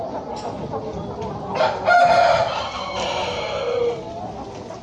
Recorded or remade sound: recorded